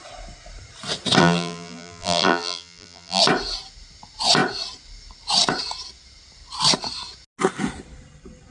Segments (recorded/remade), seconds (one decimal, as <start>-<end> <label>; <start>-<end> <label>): 0.0-1.2 recorded; 1.2-3.2 remade; 3.2-8.5 recorded